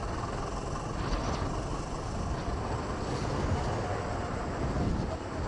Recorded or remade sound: recorded